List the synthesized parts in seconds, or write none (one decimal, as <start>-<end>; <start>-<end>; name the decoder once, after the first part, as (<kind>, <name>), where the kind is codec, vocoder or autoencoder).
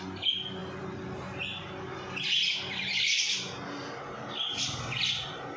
none